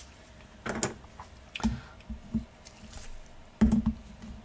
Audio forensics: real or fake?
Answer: real